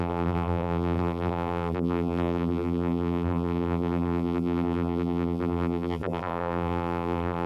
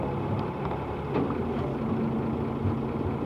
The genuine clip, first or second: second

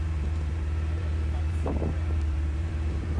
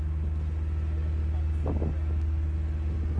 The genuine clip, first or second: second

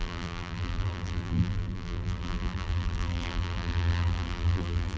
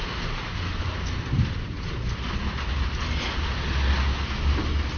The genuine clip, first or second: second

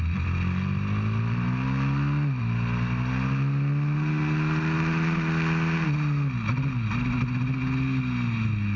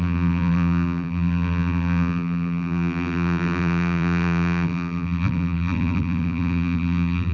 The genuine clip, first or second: first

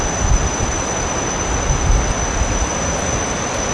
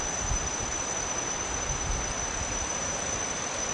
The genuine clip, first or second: first